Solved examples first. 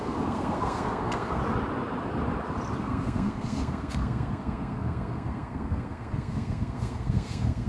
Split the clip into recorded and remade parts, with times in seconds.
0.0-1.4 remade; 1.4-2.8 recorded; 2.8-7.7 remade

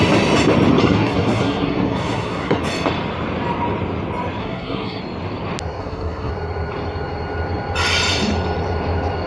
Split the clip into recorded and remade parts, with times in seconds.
0.0-0.8 recorded; 0.8-2.6 remade; 2.6-4.4 recorded; 4.4-5.0 remade; 5.0-5.8 recorded; 5.8-6.3 remade; 6.3-9.3 recorded

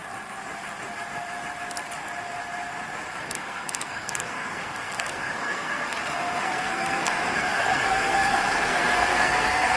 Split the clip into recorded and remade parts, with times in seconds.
0.0-3.2 recorded; 3.2-9.8 remade

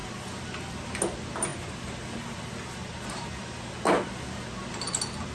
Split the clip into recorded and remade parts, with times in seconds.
0.0-5.3 recorded

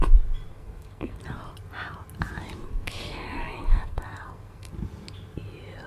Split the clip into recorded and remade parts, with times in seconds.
0.0-0.5 recorded; 0.5-1.2 remade; 1.2-2.7 recorded; 2.7-4.7 remade; 4.7-5.9 recorded

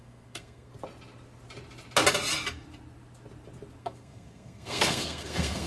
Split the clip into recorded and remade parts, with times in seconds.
0.0-0.7 remade; 0.7-3.8 recorded; 3.8-5.7 remade

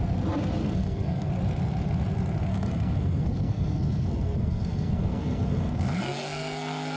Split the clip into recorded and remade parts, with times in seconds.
0.0-0.6 recorded; 0.6-1.3 remade; 1.3-2.5 recorded; 2.5-7.0 remade

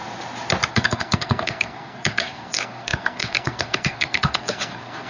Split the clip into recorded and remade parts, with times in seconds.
0.0-0.7 recorded; 0.7-5.1 remade